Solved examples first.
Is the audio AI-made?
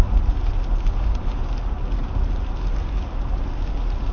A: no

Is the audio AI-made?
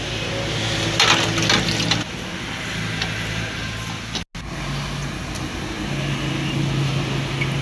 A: no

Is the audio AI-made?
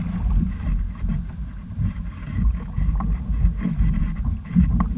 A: yes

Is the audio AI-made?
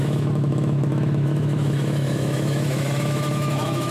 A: yes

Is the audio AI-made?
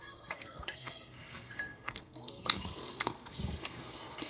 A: yes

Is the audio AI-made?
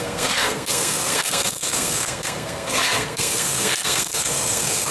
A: yes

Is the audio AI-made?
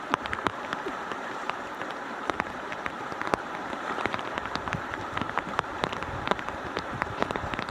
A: yes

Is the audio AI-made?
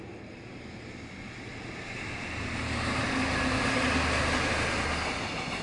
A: no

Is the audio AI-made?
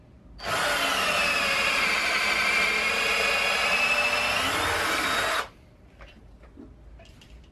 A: no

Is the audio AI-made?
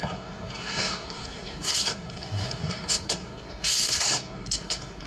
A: yes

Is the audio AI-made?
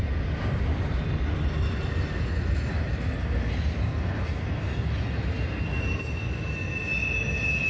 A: no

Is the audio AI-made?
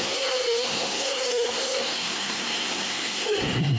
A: yes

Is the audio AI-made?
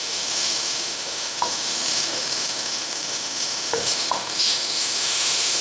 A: yes